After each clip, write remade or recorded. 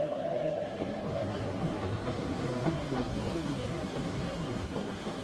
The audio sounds remade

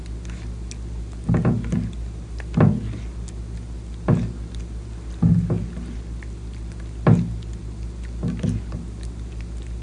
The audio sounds recorded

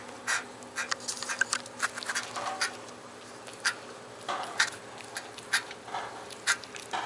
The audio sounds recorded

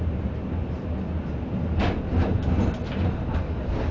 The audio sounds recorded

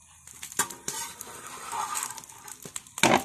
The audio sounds recorded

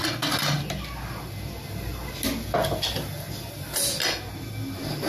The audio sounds recorded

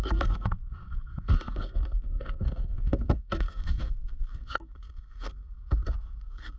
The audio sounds remade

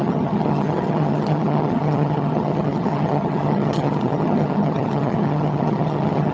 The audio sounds remade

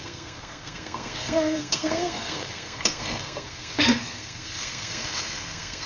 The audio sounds remade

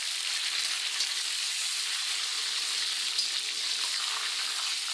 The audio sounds recorded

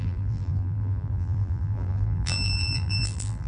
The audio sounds remade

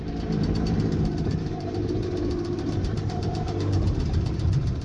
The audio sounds remade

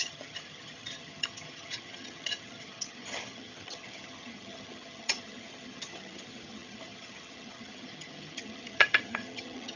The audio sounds remade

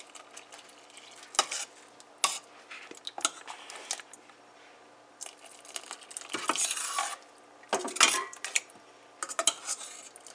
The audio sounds recorded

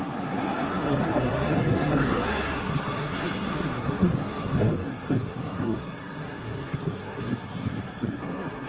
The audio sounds remade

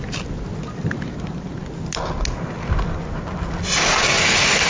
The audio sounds recorded